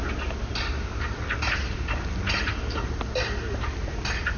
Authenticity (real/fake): real